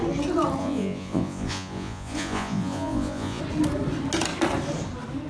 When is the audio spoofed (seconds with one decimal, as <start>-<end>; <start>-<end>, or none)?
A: 0.6-3.4